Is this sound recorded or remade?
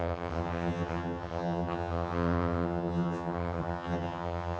remade